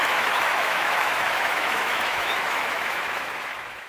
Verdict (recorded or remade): remade